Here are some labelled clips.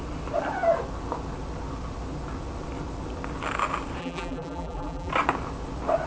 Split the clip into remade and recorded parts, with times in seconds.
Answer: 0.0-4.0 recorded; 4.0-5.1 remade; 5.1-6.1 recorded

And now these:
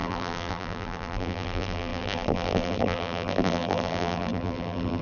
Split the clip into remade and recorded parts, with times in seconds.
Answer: 0.0-5.0 remade

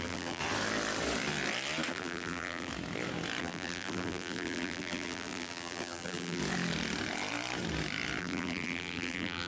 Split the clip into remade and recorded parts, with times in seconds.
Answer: 0.0-0.4 remade; 0.4-1.9 recorded; 1.9-2.7 remade; 2.7-3.4 recorded; 3.4-6.4 remade; 6.4-8.2 recorded; 8.2-9.5 remade

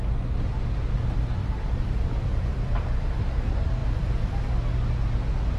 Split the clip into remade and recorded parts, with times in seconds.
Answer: 0.0-1.4 recorded; 1.4-3.2 remade; 3.2-3.8 recorded; 3.8-4.5 remade; 4.5-5.6 recorded

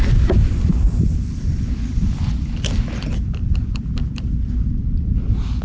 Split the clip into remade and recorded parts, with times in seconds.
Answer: 0.0-0.4 recorded; 0.4-3.8 remade; 3.8-5.6 recorded